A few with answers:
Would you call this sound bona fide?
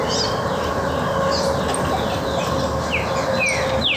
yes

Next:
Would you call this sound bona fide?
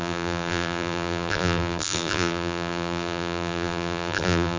no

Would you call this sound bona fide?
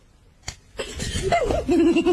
yes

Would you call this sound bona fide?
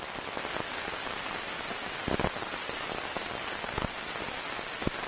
yes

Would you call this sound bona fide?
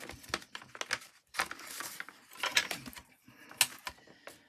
yes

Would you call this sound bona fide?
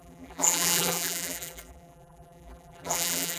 no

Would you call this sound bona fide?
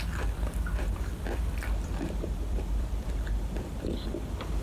no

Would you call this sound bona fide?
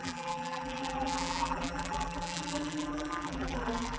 no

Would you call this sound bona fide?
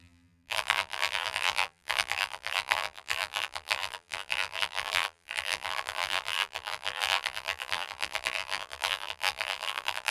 no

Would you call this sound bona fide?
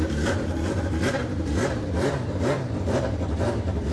no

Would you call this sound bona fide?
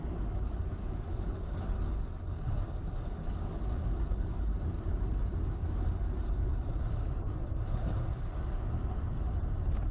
yes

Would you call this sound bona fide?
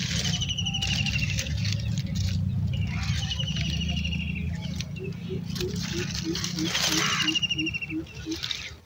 yes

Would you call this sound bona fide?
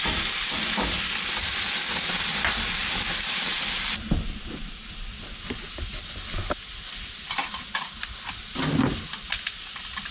yes